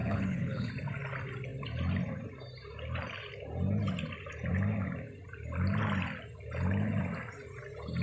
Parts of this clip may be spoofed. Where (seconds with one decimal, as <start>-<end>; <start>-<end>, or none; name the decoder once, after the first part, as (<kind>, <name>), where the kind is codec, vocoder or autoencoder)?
0.0-0.7 (codec, HILCodec)